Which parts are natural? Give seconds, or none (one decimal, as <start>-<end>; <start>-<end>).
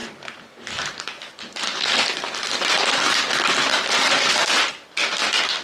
3.3-3.7; 4.7-5.6